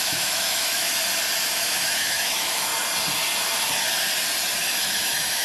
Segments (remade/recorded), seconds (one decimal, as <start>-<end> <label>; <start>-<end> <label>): 0.0-0.9 remade; 0.9-1.5 recorded; 1.5-2.7 remade; 2.7-4.6 recorded; 4.6-5.4 remade